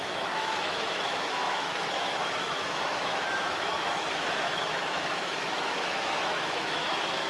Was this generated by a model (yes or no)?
yes